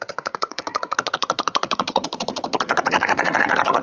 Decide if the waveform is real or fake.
fake